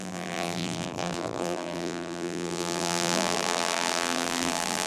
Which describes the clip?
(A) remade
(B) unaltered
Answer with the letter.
A